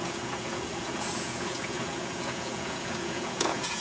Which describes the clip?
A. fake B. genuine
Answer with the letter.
A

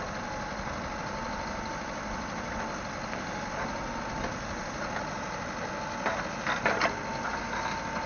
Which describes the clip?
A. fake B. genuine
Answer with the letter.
B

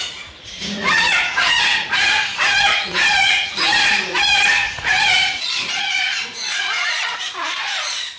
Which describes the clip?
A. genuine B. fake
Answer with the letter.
B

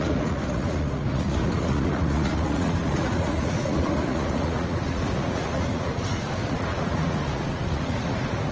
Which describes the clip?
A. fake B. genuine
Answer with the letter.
A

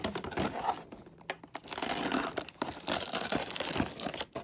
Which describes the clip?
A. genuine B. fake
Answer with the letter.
A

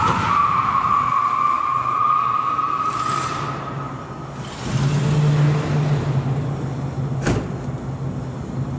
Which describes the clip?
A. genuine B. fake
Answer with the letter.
A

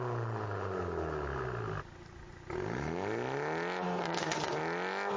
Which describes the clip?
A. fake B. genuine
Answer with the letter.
B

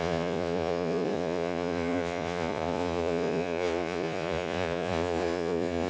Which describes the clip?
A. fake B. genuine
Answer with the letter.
A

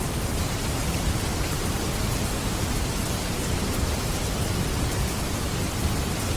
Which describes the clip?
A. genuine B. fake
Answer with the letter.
A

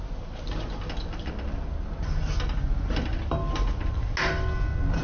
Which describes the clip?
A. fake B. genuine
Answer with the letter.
B